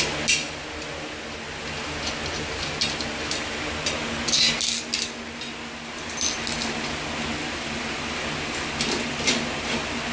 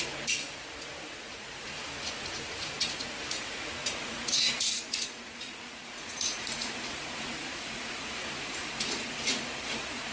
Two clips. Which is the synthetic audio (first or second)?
second